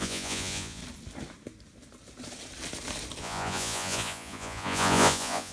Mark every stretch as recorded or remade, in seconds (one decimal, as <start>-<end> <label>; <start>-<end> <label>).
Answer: 0.0-0.8 remade; 0.8-3.2 recorded; 3.2-5.5 remade

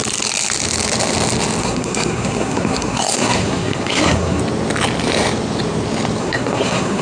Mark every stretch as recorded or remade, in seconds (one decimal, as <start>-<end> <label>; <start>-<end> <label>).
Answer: 0.0-1.6 recorded; 1.6-4.4 remade; 4.4-6.2 recorded; 6.2-7.0 remade

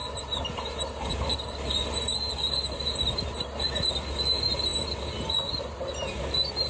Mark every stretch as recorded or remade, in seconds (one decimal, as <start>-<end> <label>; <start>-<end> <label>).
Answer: 0.0-6.7 recorded

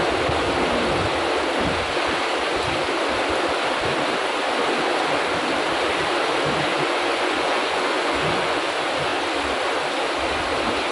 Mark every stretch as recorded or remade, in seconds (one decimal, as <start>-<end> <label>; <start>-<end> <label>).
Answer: 0.0-6.7 recorded; 6.7-8.7 remade; 8.7-10.9 recorded

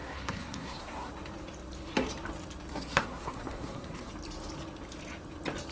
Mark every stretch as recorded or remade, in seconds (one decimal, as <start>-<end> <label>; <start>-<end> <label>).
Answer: 0.0-1.1 remade; 1.1-2.7 recorded; 2.7-4.1 remade; 4.1-5.7 recorded

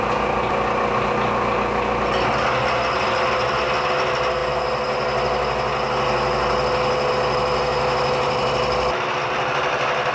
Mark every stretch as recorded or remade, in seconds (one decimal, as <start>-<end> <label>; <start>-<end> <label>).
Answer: 0.0-10.1 recorded